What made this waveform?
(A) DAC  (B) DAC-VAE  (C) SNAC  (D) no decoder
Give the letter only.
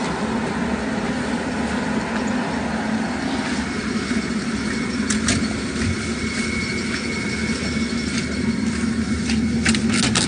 D